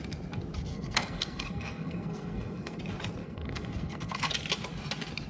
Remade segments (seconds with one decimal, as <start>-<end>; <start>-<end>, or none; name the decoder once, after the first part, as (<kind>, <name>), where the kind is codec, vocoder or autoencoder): 0.7-2.8 (codec, SNAC); 3.2-4.3